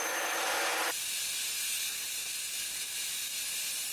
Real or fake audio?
real